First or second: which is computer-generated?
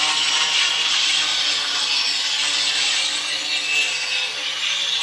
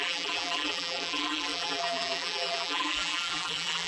second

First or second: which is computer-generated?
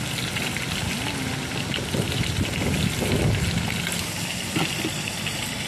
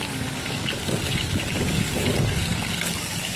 second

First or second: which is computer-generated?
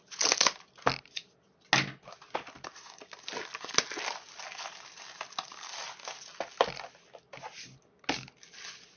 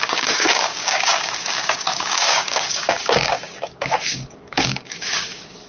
second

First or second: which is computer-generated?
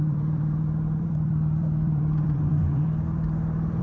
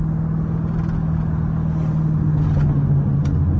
first